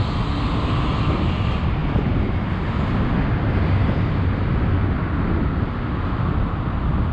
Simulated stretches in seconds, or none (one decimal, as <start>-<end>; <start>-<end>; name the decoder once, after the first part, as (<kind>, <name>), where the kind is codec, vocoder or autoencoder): none